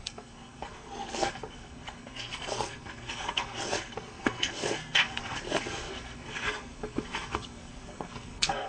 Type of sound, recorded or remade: remade